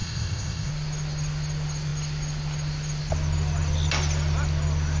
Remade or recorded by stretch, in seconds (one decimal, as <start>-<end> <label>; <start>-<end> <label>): 0.0-0.7 remade; 0.7-5.0 recorded